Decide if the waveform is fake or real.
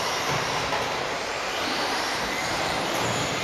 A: fake